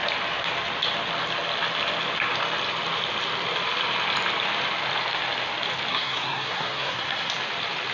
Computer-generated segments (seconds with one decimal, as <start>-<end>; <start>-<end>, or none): 5.9-7.3